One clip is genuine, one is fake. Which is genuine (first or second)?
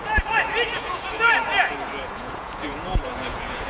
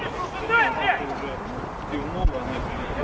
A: second